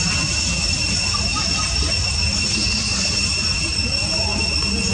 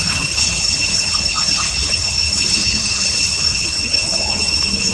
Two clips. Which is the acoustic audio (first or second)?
first